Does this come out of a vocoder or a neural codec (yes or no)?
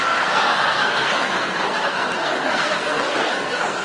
yes